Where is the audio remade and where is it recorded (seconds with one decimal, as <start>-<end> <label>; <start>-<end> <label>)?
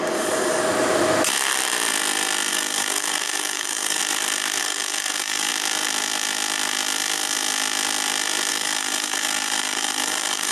0.0-0.6 remade; 0.6-2.5 recorded; 2.5-4.0 remade; 4.0-4.6 recorded; 4.6-5.5 remade; 5.5-8.5 recorded; 8.5-10.5 remade